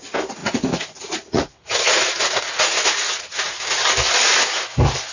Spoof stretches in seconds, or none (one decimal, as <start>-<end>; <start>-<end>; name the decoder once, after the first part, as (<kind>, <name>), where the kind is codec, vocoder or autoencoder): 0.4-3.5 (vocoder, Vocos)